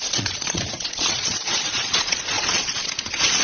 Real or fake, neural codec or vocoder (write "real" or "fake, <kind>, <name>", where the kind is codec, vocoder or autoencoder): fake, vocoder, Vocos